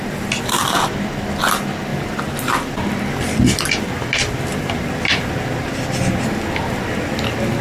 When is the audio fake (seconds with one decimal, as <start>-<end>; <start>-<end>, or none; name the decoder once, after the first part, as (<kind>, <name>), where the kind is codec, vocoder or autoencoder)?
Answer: none